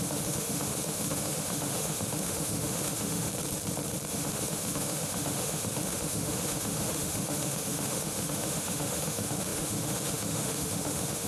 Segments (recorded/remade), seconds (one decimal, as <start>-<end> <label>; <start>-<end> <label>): 0.0-3.3 remade; 3.3-4.1 recorded; 4.1-11.3 remade